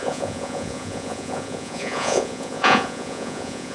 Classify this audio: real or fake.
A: fake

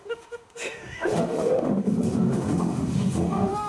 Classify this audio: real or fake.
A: fake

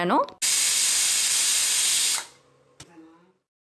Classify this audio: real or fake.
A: real